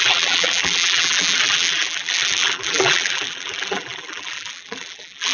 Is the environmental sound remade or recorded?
remade